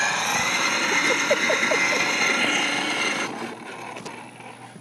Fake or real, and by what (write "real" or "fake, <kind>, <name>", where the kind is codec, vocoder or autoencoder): real